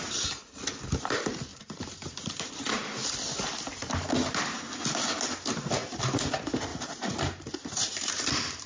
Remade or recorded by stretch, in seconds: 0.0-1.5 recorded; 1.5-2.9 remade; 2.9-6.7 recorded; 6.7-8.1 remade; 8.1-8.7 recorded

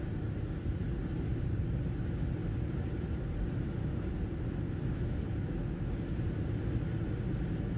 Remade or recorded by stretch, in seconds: 0.0-1.3 recorded; 1.3-2.0 remade; 2.0-2.4 recorded; 2.4-4.1 remade; 4.1-7.8 recorded

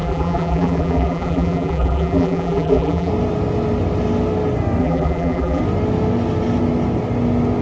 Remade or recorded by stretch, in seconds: 0.0-3.1 remade; 3.1-4.8 recorded; 4.8-5.6 remade; 5.6-7.6 recorded

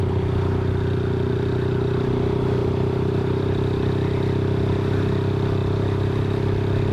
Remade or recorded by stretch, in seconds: 0.0-2.6 recorded; 2.6-3.6 remade; 3.6-5.6 recorded; 5.6-6.2 remade; 6.2-6.9 recorded

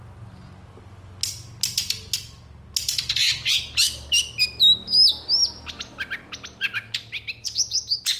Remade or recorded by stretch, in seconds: 0.0-2.8 recorded; 2.8-3.6 remade; 3.6-8.2 recorded

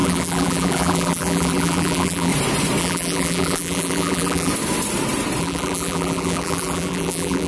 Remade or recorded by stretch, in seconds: 0.0-2.3 remade; 2.3-2.8 recorded; 2.8-4.5 remade; 4.5-5.4 recorded; 5.4-7.5 remade

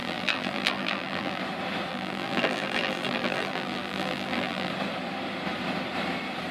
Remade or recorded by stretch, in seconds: 0.0-1.4 remade; 1.4-1.9 recorded; 1.9-4.7 remade; 4.7-6.5 recorded

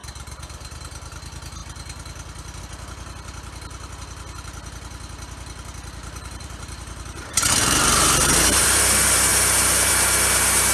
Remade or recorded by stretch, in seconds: 0.0-0.8 remade; 0.8-6.0 recorded; 6.0-8.8 remade; 8.8-9.3 recorded; 9.3-9.9 remade; 9.9-10.7 recorded